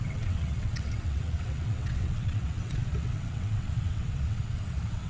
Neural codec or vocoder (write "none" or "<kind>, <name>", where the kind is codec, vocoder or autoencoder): vocoder, WaveNeXt